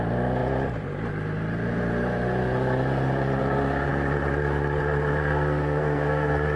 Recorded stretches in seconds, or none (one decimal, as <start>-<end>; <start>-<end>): 0.0-5.2